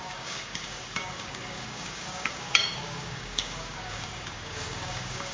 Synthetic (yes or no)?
yes